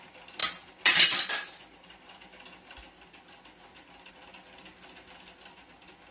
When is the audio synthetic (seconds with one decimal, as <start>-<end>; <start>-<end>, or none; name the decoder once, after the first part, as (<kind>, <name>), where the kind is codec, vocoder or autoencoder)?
none